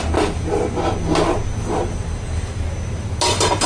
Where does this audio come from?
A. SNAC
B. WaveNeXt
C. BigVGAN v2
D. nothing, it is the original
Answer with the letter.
D